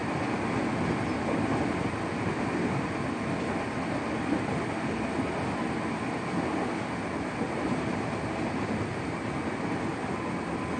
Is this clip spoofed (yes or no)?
no